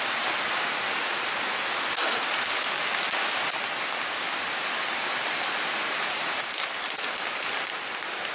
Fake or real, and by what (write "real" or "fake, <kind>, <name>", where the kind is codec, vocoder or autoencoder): real